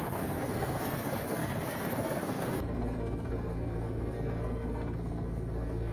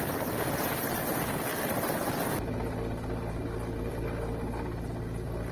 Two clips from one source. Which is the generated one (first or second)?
first